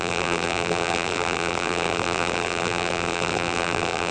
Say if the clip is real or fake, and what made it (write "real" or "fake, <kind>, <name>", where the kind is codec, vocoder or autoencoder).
fake, vocoder, BigVGAN v2